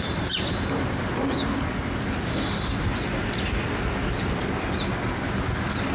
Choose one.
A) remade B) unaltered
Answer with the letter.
B